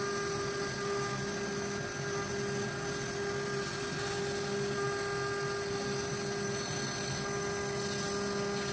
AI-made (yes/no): no